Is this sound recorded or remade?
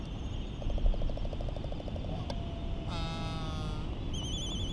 recorded